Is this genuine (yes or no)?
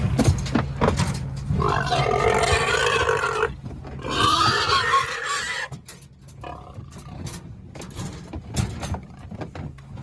yes